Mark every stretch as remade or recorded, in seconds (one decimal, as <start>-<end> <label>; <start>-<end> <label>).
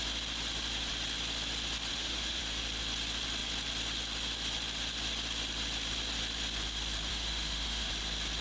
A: 0.0-1.9 recorded; 1.9-2.4 remade; 2.4-7.1 recorded; 7.1-7.9 remade; 7.9-8.4 recorded